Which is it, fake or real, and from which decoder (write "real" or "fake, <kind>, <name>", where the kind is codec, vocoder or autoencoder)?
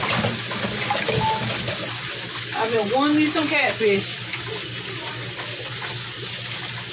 real